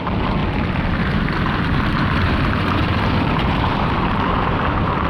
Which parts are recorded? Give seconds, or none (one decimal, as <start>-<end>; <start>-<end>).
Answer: 0.4-2.5

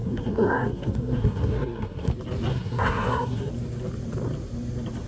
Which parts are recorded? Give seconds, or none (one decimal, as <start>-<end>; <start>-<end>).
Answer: 2.1-2.5; 3.5-5.1

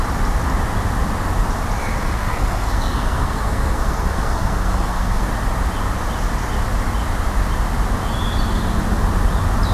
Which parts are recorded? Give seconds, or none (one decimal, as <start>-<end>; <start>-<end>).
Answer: 0.0-1.8; 5.3-9.7

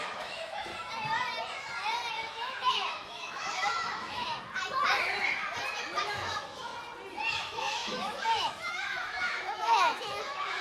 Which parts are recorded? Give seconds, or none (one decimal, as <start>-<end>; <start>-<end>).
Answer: 0.7-2.1; 4.3-6.0; 6.7-7.3

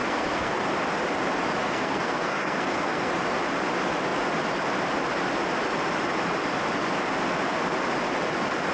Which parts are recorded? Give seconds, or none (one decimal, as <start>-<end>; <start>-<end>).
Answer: 0.7-1.6; 3.1-8.7

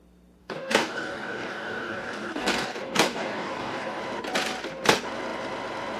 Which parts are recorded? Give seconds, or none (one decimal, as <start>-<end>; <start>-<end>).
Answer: 0.0-0.4; 4.0-6.0

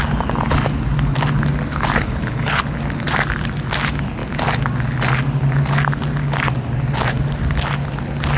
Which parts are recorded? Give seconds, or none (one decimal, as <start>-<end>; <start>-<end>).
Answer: 0.0-1.7; 2.6-8.4

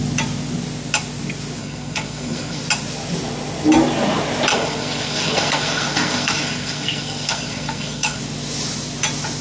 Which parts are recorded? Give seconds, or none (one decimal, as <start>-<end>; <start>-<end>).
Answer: 0.0-1.6; 2.6-4.5; 8.2-9.4